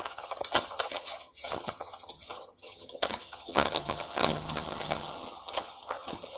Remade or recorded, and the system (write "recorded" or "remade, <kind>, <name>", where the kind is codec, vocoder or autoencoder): remade, vocoder, HiFi-GAN